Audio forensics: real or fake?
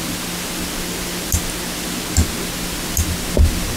real